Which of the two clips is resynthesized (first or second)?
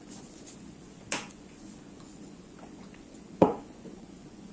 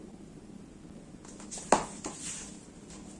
first